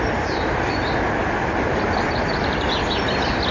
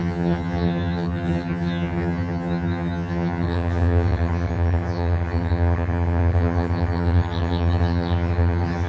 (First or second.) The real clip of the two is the first